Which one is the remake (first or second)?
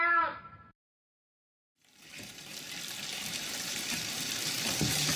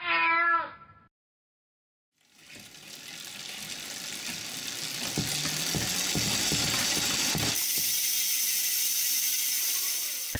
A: first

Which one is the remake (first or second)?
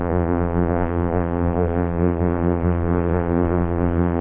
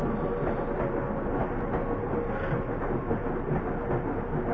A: first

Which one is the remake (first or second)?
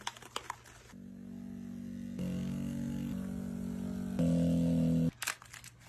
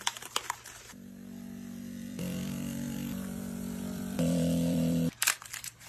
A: second